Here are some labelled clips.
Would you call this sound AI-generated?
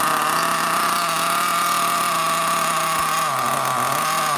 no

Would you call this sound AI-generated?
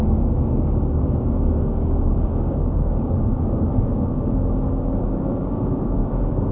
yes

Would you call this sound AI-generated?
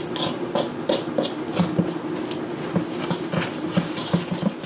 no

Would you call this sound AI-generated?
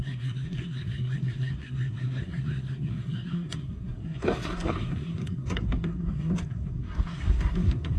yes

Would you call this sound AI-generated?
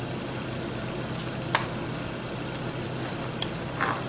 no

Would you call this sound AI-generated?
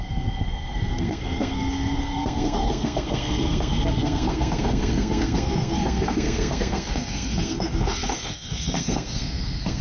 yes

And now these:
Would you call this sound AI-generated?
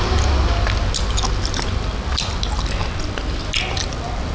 no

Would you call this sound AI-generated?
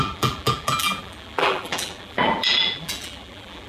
yes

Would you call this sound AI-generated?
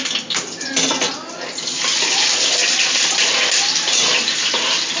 no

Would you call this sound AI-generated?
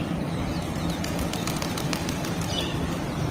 no